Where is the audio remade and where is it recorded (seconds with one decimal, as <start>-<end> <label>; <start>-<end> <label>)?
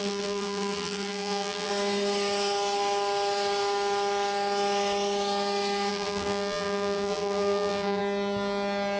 0.0-1.7 remade; 1.7-5.9 recorded; 5.9-8.0 remade; 8.0-9.0 recorded